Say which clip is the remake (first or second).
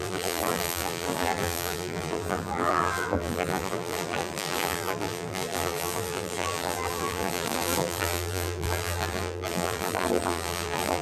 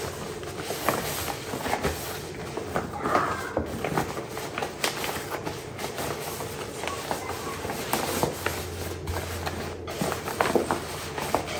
first